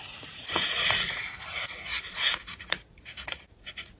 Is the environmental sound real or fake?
fake